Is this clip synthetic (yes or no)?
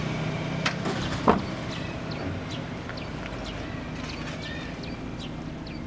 no